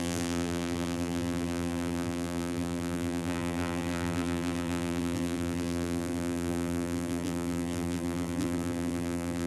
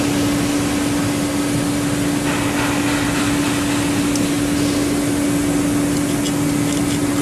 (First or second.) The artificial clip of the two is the first